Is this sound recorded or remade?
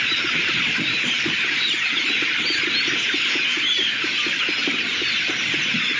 recorded